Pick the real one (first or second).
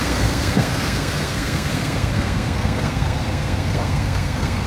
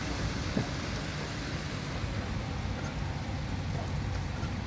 second